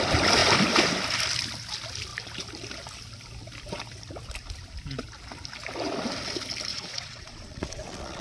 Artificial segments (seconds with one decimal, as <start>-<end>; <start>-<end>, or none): 6.7-8.2